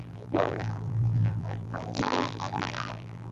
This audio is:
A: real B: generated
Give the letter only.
B